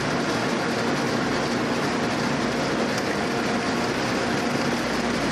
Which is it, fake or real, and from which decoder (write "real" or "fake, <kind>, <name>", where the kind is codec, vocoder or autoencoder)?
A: real